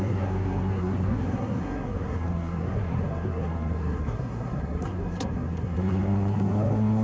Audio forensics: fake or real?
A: fake